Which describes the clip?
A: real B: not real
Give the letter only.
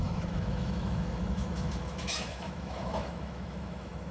B